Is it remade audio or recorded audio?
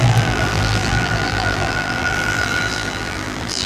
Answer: remade